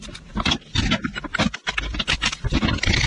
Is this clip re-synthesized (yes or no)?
no